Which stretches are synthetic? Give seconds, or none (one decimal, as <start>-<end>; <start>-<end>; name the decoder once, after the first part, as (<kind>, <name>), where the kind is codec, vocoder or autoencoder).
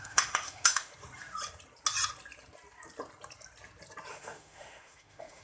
0.0-0.9 (autoencoder, DAC-VAE); 4.1-5.4